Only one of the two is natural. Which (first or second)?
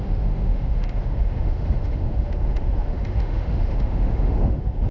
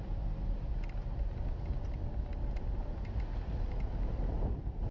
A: second